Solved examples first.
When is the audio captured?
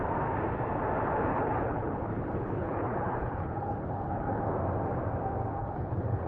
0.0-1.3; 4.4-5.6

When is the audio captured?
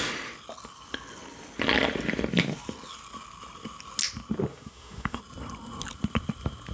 0.0-4.5; 5.2-6.7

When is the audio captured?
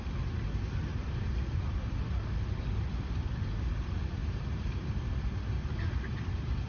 0.0-0.9; 2.0-4.2; 5.0-6.7